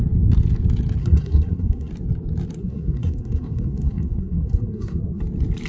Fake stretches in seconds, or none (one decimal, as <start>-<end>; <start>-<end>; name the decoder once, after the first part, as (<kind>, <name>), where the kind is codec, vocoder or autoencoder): 1.0-1.9 (codec, SNAC); 2.6-5.2